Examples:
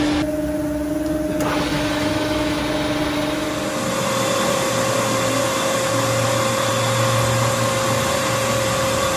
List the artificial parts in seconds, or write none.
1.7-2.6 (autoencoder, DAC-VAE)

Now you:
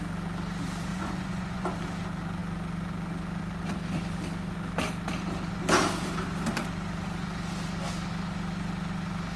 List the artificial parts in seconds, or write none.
0.9-1.7 (vocoder, Vocos)

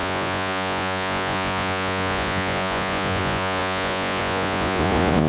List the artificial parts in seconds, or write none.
0.0-5.3 (vocoder, Vocos)

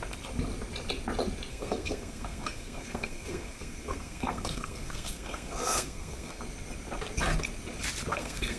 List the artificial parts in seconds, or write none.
1.5-6.4 (codec, SNAC); 8.1-8.6

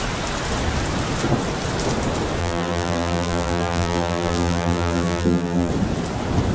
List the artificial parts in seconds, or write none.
2.4-5.7 (vocoder, BigVGAN v2)

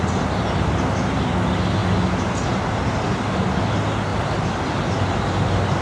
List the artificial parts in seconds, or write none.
none

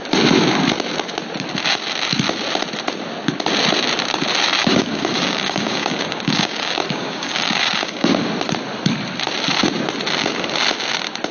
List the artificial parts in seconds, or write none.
4.6-8.3 (codec, DAC)

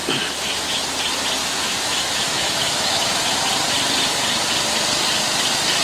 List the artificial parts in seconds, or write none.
0.0-0.8 (autoencoder, DAC-VAE); 1.4-3.3